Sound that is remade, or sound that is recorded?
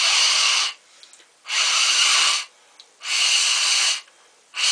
recorded